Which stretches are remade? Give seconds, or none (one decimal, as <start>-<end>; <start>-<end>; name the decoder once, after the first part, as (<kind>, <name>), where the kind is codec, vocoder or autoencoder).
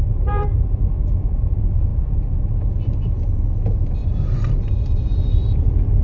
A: 0.0-4.0 (vocoder, Vocos); 4.7-6.0